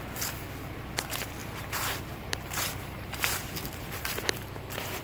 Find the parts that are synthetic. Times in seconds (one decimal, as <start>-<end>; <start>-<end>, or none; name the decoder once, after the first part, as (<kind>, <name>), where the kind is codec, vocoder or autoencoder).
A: 1.4-4.2 (vocoder, BigVGAN v2)